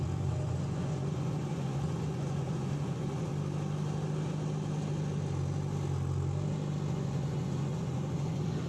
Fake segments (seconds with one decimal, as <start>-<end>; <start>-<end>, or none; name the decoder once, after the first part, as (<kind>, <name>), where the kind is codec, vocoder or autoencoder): 0.0-3.3 (vocoder, Vocos); 6.9-8.7